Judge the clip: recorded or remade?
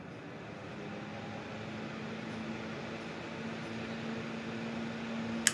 recorded